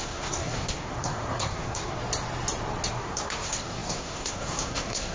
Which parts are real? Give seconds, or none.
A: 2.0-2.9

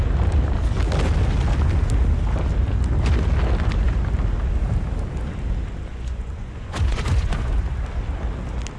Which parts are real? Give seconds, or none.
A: 0.0-5.9; 7.5-8.8

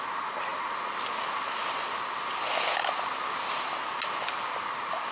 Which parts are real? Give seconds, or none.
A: 0.0-5.1